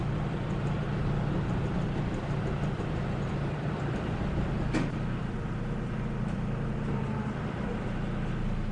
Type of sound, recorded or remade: remade